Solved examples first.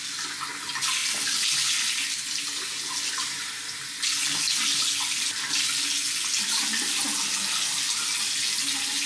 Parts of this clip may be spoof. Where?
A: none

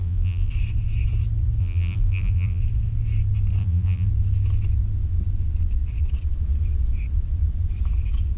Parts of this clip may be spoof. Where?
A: 0.0-0.5 (vocoder, BigVGAN v2); 1.6-2.6; 3.6-4.1